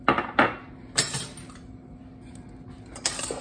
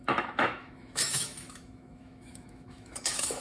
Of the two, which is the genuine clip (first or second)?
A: first